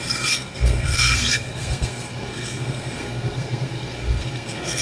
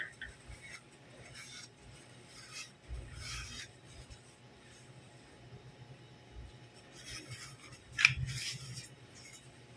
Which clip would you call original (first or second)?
second